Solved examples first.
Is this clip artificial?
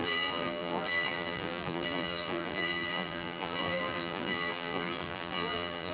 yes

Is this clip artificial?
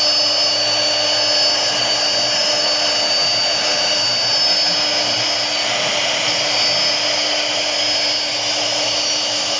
no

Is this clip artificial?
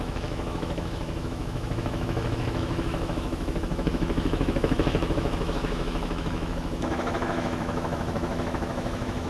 yes